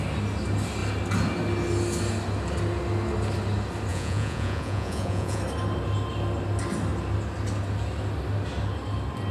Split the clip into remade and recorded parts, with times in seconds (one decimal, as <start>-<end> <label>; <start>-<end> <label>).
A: 0.0-3.9 recorded; 3.9-5.4 remade; 5.4-9.3 recorded

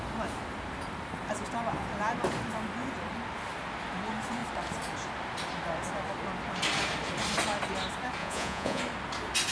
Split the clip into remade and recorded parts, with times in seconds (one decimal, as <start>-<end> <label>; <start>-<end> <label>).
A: 0.0-8.2 recorded; 8.2-8.8 remade; 8.8-9.5 recorded